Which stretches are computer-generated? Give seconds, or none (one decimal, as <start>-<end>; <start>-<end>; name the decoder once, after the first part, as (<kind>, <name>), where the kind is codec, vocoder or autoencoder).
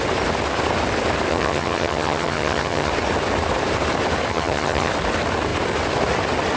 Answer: 1.3-2.9 (vocoder, HiFi-GAN); 4.3-4.9